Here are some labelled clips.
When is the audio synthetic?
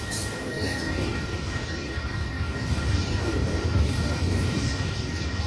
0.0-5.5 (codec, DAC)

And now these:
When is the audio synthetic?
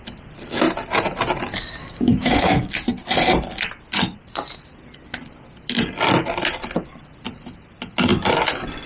1.8-2.7 (codec, DAC)